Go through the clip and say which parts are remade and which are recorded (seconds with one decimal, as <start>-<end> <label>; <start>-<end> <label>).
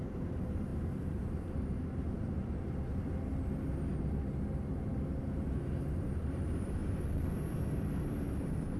0.0-0.7 remade; 0.7-5.8 recorded; 5.8-6.8 remade; 6.8-7.8 recorded; 7.8-8.8 remade